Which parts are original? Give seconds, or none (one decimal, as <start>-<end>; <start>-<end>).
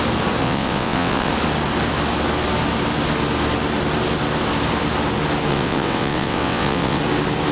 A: 0.0-0.4; 1.3-5.5; 7.0-7.5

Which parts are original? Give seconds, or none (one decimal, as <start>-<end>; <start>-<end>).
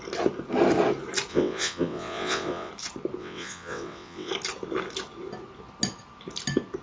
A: 0.0-1.3; 2.7-3.2; 4.3-6.8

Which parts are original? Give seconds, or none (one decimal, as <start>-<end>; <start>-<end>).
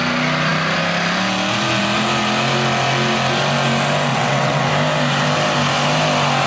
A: 0.0-4.1; 4.7-6.5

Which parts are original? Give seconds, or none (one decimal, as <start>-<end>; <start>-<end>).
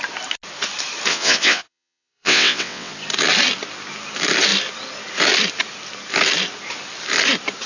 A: 0.0-1.1; 2.9-7.7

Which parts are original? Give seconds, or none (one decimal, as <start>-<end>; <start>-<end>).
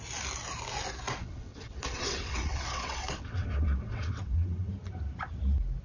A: 0.0-1.2; 4.7-5.8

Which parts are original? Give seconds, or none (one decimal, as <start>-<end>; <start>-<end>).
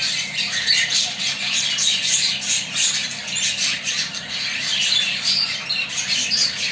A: 0.0-6.7